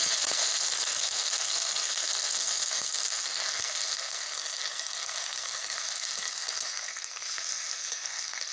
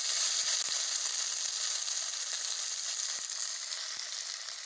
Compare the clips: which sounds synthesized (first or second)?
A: first